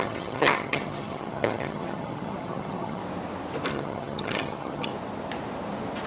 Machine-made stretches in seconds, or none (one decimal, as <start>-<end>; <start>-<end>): 0.0-3.0; 3.7-4.9